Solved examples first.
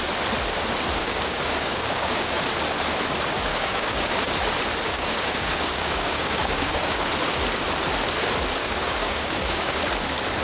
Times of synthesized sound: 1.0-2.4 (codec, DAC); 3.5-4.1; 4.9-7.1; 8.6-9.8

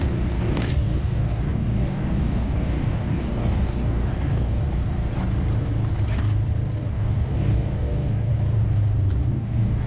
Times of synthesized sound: 0.0-4.6 (codec, DAC); 6.9-8.3; 9.3-9.9

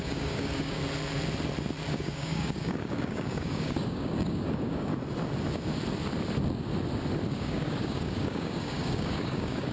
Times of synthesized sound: 0.0-0.8 (codec, DAC); 1.9-4.9; 7.3-9.7

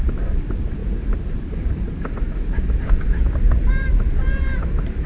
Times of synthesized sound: none